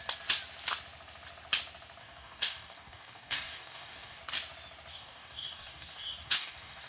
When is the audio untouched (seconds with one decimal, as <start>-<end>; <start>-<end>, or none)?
0.0-2.0; 4.2-4.9